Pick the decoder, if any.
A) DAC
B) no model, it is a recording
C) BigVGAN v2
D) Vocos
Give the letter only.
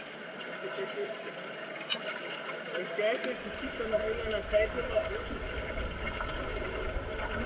B